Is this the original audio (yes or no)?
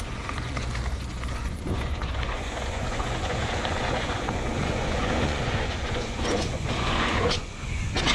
no